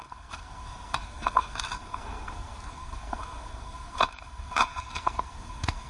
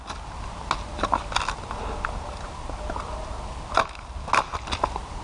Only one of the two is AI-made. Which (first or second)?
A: first